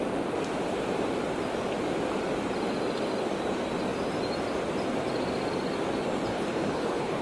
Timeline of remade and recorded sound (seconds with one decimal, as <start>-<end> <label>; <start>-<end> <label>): 0.0-6.3 recorded; 6.3-7.2 remade